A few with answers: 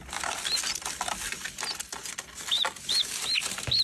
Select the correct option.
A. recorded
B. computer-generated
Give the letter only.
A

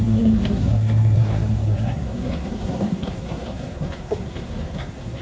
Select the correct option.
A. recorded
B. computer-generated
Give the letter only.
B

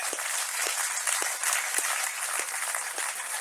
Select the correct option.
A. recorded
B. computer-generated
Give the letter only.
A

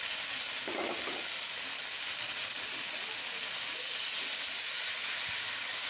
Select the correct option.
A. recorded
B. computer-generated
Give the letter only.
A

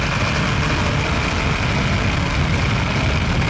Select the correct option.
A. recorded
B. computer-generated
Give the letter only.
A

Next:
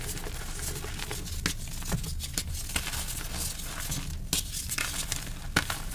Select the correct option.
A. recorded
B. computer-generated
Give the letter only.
A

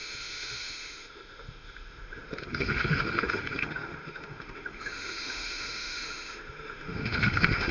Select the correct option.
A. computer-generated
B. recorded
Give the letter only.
A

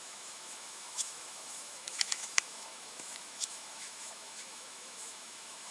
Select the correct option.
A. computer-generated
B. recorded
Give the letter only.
A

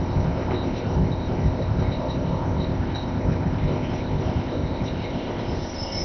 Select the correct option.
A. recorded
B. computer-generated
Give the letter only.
B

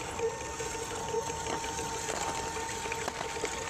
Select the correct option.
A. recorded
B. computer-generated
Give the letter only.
A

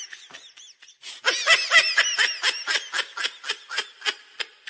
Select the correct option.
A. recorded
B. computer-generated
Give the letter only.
A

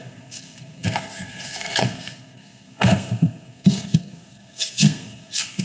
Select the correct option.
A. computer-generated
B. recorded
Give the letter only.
A